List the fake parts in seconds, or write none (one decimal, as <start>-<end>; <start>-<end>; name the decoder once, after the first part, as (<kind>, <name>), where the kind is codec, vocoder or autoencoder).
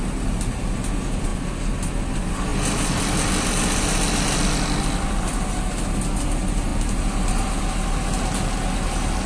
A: none